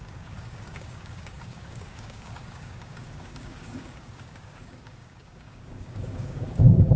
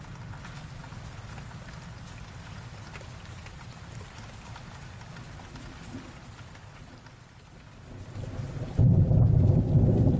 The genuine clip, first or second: second